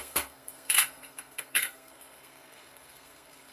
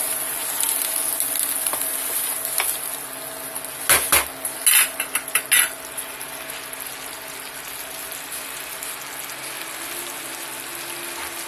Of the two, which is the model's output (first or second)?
first